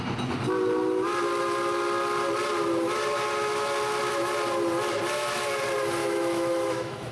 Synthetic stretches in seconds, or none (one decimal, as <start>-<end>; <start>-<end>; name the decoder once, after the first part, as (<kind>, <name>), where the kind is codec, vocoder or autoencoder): 6.0-7.1 (autoencoder, DAC-VAE)